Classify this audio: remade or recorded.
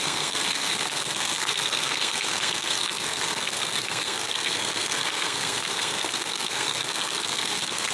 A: remade